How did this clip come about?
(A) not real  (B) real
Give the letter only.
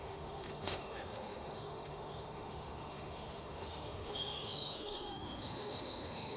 A